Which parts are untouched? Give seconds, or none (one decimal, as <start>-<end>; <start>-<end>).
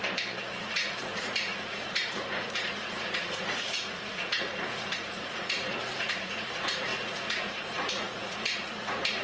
0.0-0.6